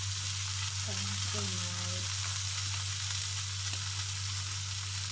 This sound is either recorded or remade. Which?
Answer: recorded